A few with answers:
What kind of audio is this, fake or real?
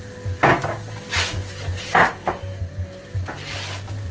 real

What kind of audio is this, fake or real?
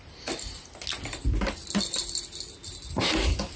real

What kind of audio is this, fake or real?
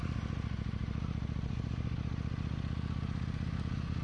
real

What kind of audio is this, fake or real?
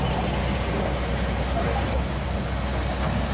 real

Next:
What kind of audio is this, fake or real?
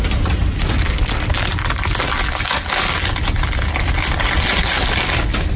real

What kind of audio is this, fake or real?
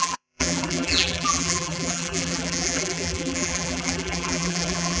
fake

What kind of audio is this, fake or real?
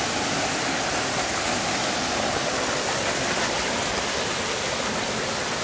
real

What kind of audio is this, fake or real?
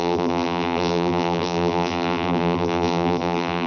fake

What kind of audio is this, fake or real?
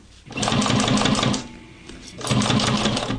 real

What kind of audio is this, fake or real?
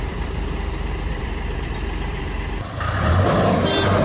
fake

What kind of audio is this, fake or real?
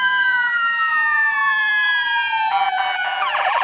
fake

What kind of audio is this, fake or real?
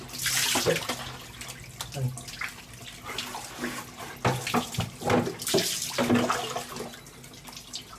real